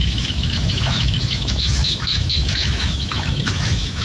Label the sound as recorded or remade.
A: remade